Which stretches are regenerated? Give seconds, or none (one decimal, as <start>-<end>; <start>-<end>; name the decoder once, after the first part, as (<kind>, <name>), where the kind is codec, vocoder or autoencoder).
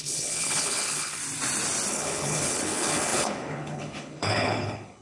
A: 0.0-1.2 (codec, HILCodec); 1.9-5.0